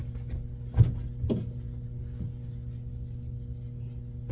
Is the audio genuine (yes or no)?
yes